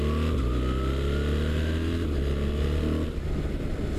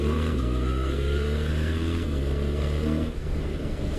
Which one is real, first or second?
first